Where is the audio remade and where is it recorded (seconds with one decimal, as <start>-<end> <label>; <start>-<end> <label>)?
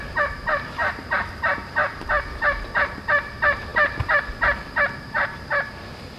0.0-6.2 recorded